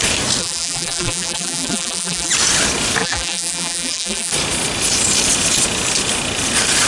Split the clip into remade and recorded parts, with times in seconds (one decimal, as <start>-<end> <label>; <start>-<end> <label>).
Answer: 0.0-0.4 recorded; 0.4-2.3 remade; 2.3-3.0 recorded; 3.0-4.3 remade; 4.3-6.9 recorded